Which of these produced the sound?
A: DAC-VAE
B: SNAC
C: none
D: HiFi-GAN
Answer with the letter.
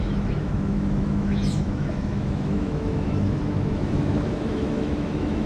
A